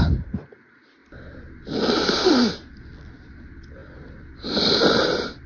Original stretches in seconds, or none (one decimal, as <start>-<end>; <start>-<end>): 0.0-3.8; 5.0-5.5